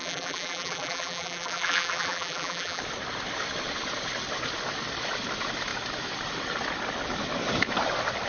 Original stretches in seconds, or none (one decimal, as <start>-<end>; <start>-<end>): 2.8-8.3